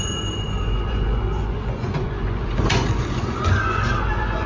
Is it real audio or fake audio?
fake